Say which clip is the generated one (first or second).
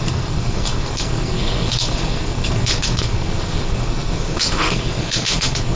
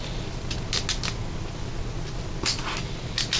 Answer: first